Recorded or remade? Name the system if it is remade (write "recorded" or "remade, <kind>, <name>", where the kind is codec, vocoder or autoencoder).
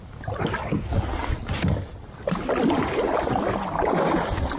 recorded